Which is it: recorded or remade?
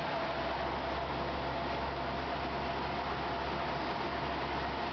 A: recorded